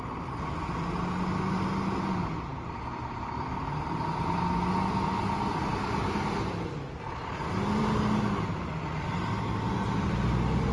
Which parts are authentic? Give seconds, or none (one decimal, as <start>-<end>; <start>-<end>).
0.0-10.7